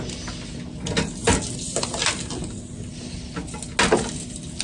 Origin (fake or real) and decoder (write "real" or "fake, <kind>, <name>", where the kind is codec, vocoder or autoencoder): real